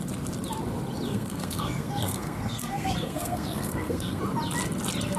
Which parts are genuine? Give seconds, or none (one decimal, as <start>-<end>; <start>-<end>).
0.0-1.1; 4.2-5.2